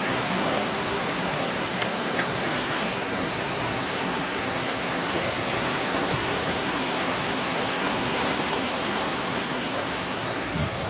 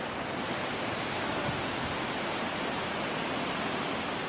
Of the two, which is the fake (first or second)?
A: first